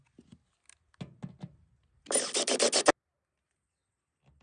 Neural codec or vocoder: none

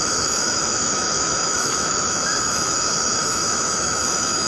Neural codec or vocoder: autoencoder, DAC-VAE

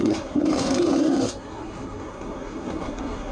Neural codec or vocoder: codec, SNAC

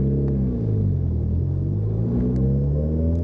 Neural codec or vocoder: none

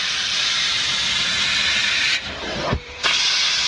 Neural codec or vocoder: vocoder, BigVGAN v2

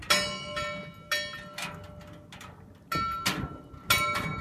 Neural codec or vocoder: none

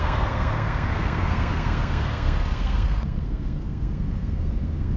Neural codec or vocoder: codec, SNAC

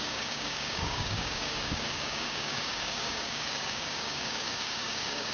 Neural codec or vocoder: codec, DAC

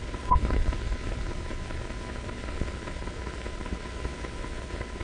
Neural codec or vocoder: codec, HILCodec